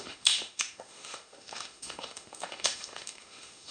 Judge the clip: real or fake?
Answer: fake